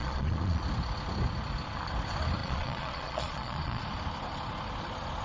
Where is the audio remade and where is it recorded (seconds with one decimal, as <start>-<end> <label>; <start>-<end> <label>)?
0.0-0.6 remade; 0.6-2.4 recorded; 2.4-3.8 remade; 3.8-5.2 recorded